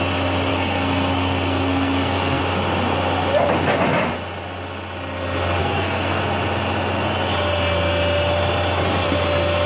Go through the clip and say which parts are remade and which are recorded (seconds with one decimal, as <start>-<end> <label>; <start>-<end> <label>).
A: 0.0-0.5 recorded; 0.5-2.4 remade; 2.4-5.6 recorded; 5.6-6.2 remade; 6.2-9.7 recorded

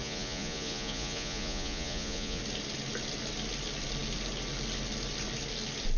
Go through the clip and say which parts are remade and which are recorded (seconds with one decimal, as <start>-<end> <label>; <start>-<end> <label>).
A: 0.0-2.4 remade; 2.4-6.0 recorded

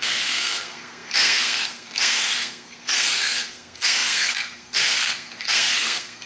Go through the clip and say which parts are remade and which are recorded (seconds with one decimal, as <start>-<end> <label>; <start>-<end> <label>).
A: 0.0-6.3 remade